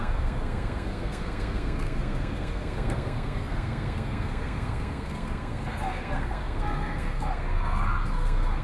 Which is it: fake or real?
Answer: fake